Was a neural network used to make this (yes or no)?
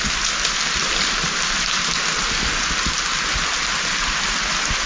no